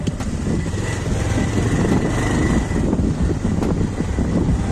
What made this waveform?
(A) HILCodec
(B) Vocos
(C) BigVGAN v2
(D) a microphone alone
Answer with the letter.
D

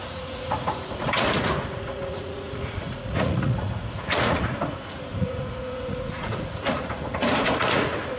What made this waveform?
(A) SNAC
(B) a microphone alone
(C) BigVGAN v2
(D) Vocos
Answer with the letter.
D